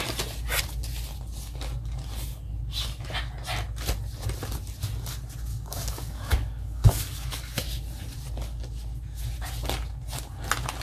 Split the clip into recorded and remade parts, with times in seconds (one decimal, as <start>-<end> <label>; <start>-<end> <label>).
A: 0.0-5.5 recorded; 5.5-7.5 remade; 7.5-10.8 recorded